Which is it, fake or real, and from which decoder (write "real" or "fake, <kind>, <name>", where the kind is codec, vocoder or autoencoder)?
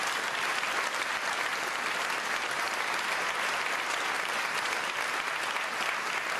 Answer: real